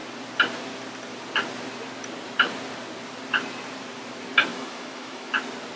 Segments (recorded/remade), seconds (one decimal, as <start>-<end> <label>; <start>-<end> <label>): 0.0-4.5 recorded; 4.5-5.3 remade; 5.3-5.8 recorded